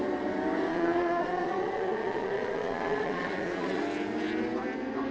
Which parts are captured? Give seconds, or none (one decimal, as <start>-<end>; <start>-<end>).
0.0-0.7; 3.8-5.1